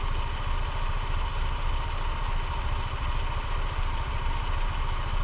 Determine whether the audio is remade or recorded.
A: recorded